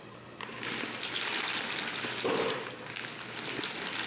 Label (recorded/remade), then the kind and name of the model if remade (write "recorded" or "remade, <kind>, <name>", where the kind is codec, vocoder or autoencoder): recorded